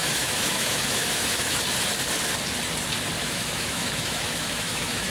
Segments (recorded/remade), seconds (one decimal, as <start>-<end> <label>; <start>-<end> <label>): 0.0-1.6 remade; 1.6-3.2 recorded; 3.2-5.1 remade

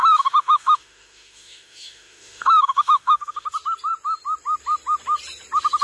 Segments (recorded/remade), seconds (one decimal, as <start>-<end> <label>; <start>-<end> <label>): 0.0-3.5 remade; 3.5-5.8 recorded

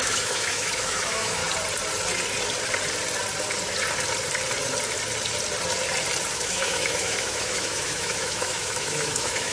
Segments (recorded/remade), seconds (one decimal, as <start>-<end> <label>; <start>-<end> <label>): 0.0-1.4 remade; 1.4-6.3 recorded; 6.3-9.5 remade

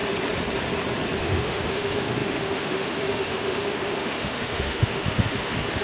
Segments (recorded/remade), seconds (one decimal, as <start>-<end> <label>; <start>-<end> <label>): 0.0-1.2 recorded; 1.2-5.8 remade